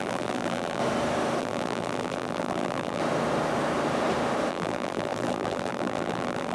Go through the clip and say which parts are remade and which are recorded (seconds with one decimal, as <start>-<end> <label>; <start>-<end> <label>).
0.0-0.8 remade; 0.8-1.4 recorded; 1.4-3.0 remade; 3.0-4.5 recorded; 4.5-6.5 remade